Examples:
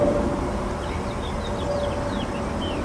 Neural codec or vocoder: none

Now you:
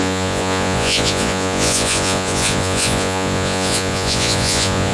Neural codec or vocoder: vocoder, Vocos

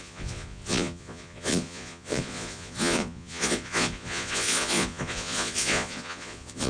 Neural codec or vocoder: vocoder, Vocos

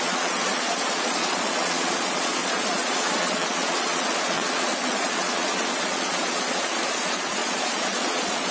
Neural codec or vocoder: vocoder, Vocos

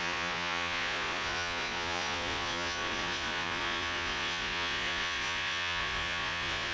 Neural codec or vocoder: vocoder, Vocos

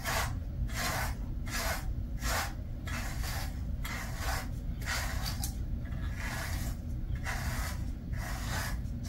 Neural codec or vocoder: none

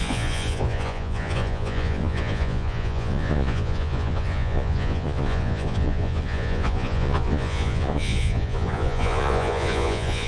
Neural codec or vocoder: vocoder, Vocos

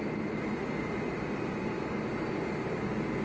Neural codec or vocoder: none